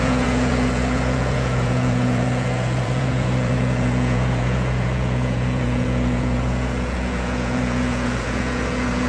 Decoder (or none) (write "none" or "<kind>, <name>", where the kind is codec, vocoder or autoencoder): vocoder, Vocos